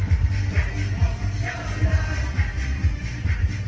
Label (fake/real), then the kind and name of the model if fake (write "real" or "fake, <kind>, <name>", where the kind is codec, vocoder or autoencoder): real